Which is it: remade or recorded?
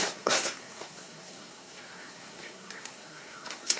remade